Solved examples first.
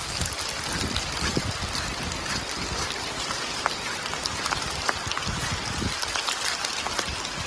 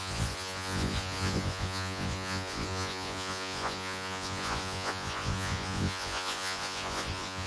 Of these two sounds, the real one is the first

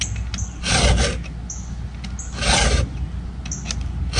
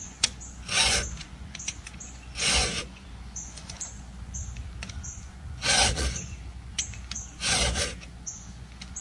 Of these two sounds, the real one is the first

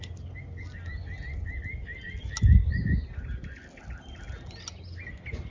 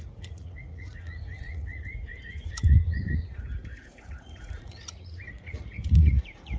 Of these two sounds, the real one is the first